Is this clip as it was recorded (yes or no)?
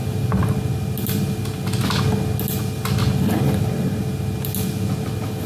yes